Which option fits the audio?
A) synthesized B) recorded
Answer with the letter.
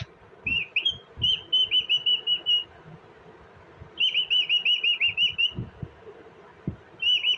B